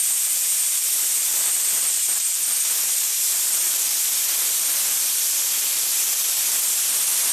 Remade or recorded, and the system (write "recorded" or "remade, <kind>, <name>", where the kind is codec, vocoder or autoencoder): remade, vocoder, BigVGAN v2